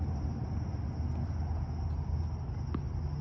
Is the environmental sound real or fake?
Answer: real